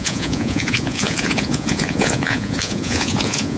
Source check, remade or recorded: remade